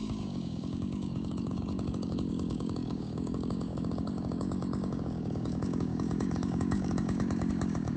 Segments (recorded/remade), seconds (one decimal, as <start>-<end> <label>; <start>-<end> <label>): 0.0-8.0 remade